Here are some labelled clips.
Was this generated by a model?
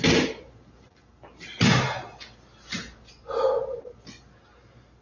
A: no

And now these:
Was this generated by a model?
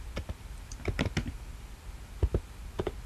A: no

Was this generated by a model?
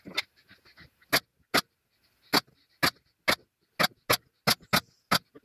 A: no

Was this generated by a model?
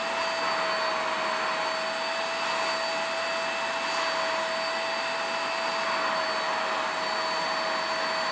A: no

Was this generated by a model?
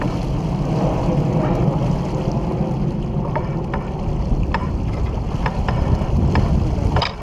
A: no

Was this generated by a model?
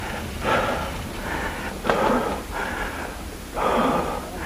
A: no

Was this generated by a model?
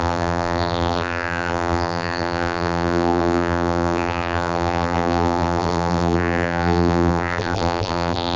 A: yes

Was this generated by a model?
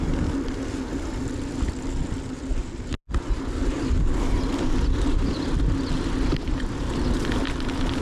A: no